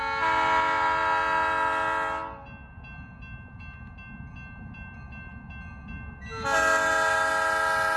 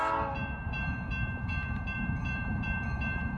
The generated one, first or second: second